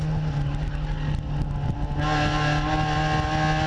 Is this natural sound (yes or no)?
yes